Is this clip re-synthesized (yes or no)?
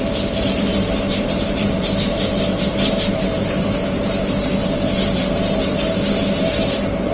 yes